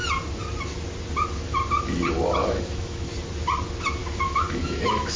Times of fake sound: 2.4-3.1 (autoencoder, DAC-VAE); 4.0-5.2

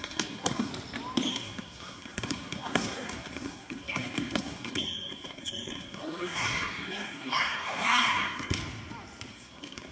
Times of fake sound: 0.0-0.7 (codec, SNAC); 1.3-8.6; 9.3-9.9

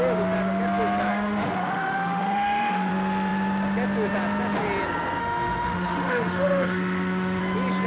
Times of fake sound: 1.1-2.9 (autoencoder, DAC-VAE); 5.2-7.4

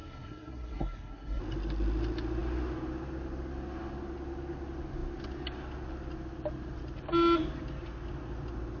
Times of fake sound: 0.0-1.4 (codec, SNAC)

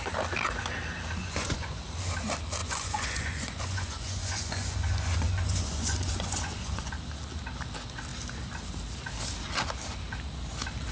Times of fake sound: 1.2-1.8 (vocoder, Vocos); 2.6-6.9

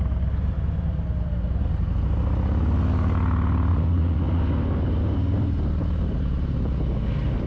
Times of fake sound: 3.7-4.4 (vocoder, Vocos)

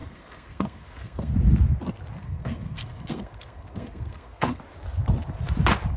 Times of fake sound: 0.0-1.3 (codec, SNAC); 2.2-4.6